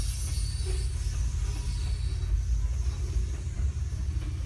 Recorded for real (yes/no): yes